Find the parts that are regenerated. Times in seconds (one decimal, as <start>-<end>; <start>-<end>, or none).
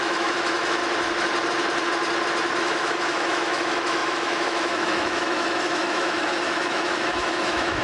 0.0-0.8; 2.6-7.8